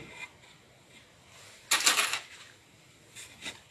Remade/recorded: recorded